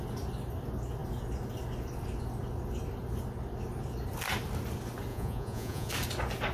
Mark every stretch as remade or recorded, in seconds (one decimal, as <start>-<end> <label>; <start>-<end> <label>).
0.0-5.1 recorded; 5.1-5.9 remade; 5.9-6.5 recorded